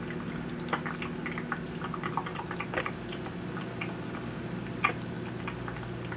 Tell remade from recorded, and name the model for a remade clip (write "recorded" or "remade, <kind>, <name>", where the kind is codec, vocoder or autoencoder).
recorded